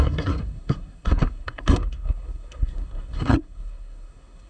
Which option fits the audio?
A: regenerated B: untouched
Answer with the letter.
A